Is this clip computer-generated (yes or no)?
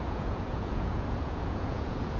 yes